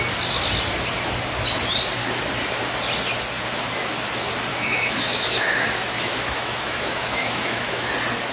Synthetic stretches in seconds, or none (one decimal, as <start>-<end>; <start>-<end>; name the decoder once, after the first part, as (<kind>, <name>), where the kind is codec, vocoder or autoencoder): 4.5-7.9 (autoencoder, DAC-VAE)